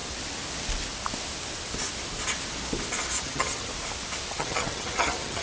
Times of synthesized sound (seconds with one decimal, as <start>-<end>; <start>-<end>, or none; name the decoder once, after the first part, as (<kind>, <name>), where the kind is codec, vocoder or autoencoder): 3.2-3.7 (vocoder, HiFi-GAN); 4.3-5.4